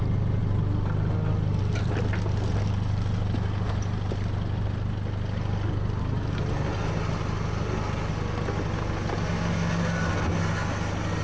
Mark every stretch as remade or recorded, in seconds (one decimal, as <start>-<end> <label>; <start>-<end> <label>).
0.0-11.2 recorded